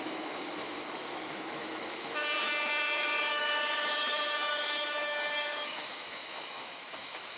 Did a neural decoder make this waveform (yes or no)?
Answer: yes